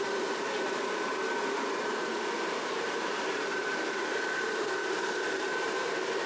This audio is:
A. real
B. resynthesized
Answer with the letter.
B